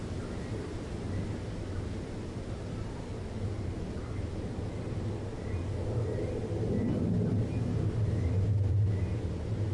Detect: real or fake real